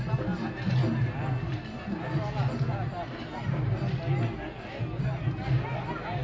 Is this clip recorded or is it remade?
recorded